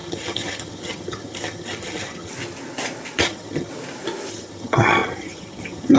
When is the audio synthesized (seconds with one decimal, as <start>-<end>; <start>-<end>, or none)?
0.0-2.3; 3.2-3.7; 4.3-6.0